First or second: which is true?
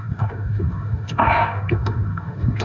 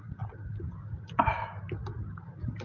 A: second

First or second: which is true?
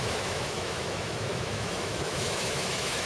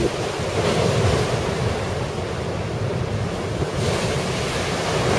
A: second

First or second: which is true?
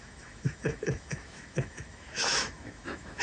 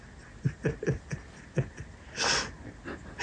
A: second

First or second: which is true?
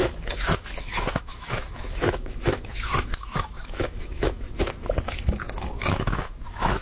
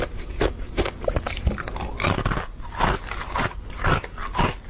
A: second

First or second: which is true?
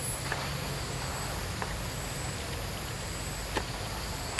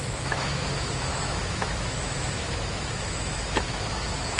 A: first